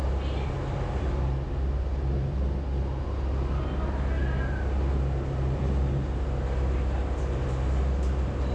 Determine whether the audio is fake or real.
real